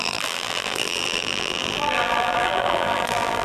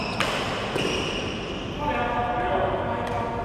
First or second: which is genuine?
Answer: second